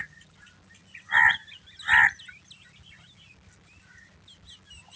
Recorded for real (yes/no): yes